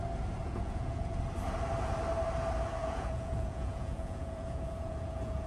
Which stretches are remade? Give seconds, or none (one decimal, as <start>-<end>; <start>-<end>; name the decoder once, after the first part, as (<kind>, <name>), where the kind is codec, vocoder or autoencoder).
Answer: 0.4-1.2 (vocoder, Vocos); 2.8-5.5